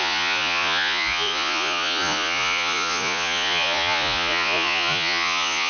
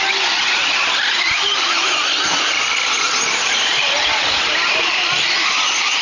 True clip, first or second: second